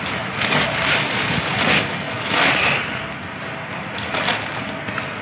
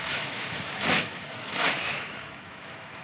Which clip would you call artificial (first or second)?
second